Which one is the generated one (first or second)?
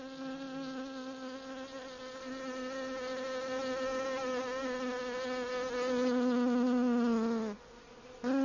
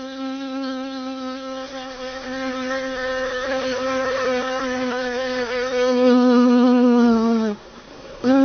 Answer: second